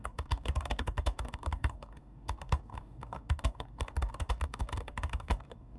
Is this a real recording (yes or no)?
no